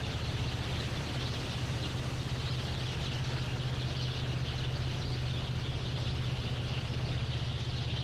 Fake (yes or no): no